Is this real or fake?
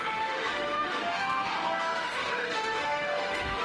fake